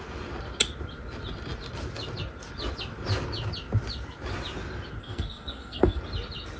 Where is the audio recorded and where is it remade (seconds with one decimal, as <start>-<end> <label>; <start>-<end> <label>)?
0.0-5.0 recorded; 5.0-6.0 remade; 6.0-6.6 recorded